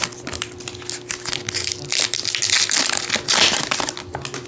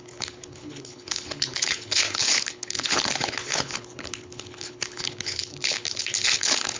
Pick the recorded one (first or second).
first